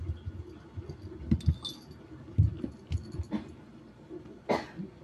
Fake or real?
real